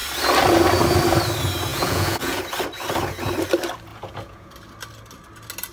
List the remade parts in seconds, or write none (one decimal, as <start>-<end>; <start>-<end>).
1.7-2.4; 3.9-4.5